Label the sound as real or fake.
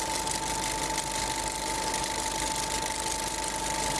real